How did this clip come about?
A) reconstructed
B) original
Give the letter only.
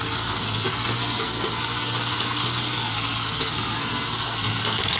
A